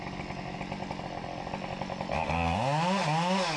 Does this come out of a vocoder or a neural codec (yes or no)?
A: no